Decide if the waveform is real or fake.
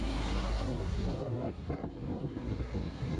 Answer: fake